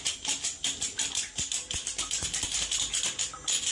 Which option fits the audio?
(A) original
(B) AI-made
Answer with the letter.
A